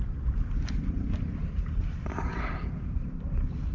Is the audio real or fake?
real